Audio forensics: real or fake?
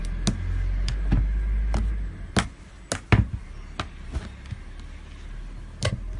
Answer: real